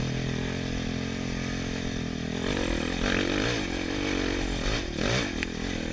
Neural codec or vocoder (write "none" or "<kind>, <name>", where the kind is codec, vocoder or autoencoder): none